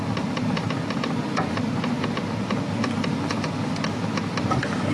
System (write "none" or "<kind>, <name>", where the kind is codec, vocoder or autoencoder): none